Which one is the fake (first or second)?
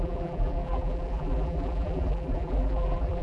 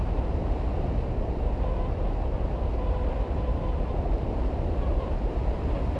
first